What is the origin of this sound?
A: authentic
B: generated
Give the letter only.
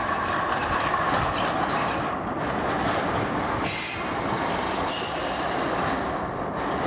A